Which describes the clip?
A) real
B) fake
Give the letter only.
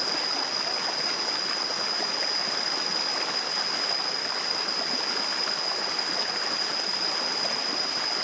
A